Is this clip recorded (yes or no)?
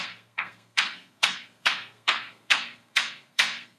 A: no